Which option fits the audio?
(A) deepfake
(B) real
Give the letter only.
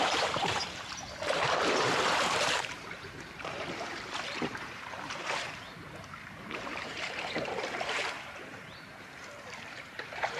A